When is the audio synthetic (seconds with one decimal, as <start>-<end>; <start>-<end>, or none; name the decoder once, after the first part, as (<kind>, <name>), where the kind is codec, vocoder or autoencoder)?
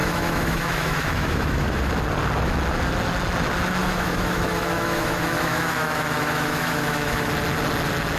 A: 0.0-1.9 (autoencoder, DAC-VAE); 3.8-7.3